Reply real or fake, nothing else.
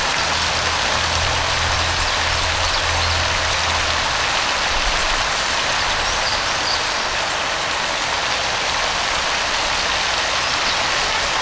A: real